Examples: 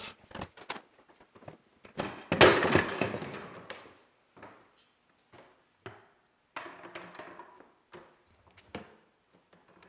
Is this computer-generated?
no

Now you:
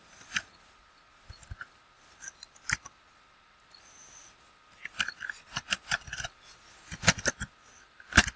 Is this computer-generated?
no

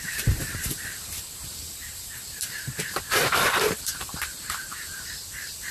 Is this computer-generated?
yes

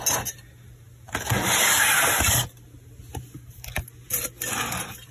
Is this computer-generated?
no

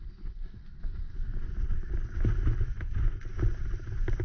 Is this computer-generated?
no